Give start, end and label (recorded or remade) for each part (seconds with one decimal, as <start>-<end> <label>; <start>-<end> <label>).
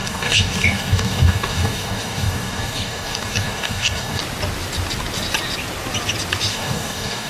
0.0-4.2 remade; 4.2-6.5 recorded; 6.5-7.3 remade